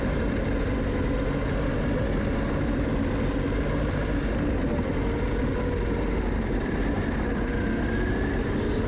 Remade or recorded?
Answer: recorded